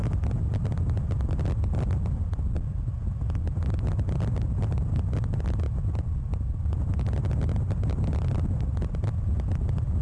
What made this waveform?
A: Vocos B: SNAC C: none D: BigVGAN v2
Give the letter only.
C